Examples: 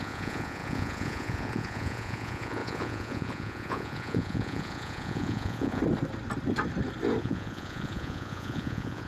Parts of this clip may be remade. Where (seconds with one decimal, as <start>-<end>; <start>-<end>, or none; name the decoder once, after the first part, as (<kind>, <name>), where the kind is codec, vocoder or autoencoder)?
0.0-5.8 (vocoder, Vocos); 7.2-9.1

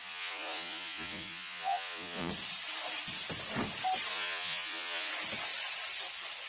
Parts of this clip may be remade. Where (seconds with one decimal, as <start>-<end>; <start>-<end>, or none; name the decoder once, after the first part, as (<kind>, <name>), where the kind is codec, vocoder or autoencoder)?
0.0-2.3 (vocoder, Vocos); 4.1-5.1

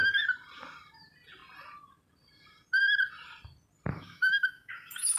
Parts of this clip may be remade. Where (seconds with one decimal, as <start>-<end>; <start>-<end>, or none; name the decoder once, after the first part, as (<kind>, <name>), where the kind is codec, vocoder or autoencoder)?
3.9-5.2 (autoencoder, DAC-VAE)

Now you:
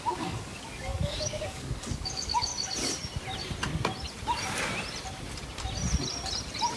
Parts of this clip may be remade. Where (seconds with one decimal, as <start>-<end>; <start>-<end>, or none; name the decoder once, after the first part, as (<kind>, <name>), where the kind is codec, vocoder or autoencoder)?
0.0-2.5 (codec, DAC)

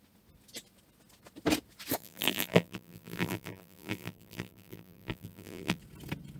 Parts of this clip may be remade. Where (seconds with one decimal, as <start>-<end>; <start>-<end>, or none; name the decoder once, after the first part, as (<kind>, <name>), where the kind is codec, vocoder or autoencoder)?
2.0-5.8 (vocoder, BigVGAN v2)